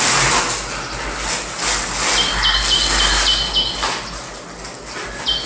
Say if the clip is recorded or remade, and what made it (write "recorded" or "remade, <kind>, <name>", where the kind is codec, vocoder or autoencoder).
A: recorded